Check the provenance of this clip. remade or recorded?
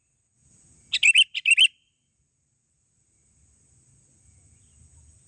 recorded